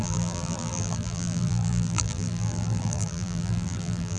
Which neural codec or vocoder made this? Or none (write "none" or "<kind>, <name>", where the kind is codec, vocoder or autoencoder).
vocoder, BigVGAN v2